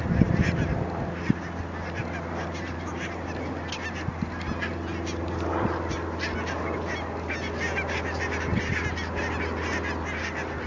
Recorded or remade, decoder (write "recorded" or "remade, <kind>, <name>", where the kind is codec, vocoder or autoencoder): recorded